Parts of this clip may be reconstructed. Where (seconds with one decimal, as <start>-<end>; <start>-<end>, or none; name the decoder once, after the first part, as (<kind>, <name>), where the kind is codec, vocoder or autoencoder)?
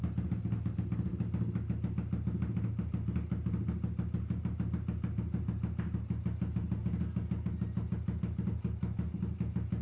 none